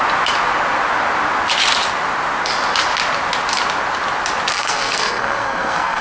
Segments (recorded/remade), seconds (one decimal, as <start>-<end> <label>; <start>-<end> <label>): 0.0-4.5 recorded; 4.5-6.0 remade